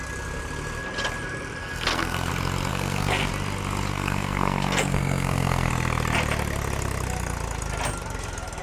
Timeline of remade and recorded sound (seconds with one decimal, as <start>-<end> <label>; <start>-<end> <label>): 0.0-1.6 recorded; 1.6-2.3 remade; 2.3-2.7 recorded; 2.7-3.3 remade; 3.3-3.9 recorded; 3.9-5.7 remade; 5.7-8.6 recorded